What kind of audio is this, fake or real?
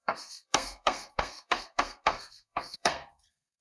fake